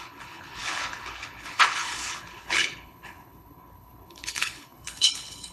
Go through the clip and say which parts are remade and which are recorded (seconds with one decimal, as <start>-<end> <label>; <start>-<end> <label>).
0.0-5.5 remade